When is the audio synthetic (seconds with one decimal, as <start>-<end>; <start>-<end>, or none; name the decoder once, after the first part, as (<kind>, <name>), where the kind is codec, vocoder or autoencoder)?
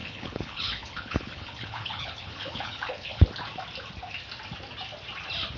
0.0-3.2 (codec, HILCodec)